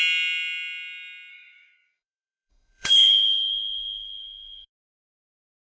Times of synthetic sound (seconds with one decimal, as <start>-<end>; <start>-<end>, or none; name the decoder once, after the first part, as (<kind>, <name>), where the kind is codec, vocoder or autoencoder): 1.3-4.7 (codec, DAC)